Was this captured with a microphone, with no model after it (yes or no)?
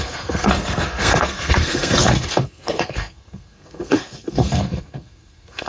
no